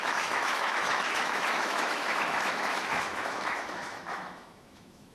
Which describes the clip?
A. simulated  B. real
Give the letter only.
A